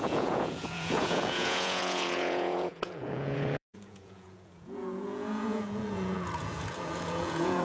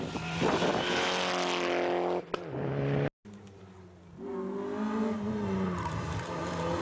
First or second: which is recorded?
second